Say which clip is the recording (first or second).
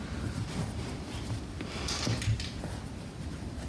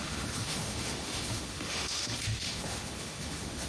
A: first